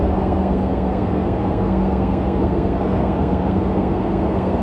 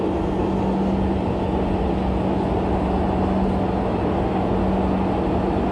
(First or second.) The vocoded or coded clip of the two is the first